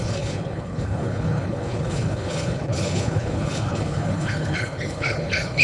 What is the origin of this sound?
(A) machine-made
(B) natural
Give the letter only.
A